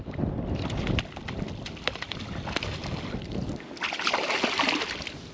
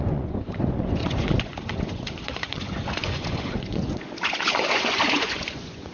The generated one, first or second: second